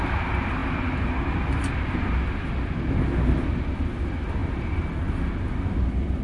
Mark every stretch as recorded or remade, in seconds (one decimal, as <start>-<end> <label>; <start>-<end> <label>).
0.0-6.2 recorded